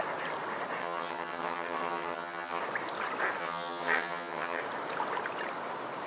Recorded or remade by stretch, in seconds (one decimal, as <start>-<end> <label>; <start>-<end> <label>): 0.0-0.8 recorded; 0.8-2.6 remade; 2.6-3.4 recorded; 3.4-4.6 remade; 4.6-6.1 recorded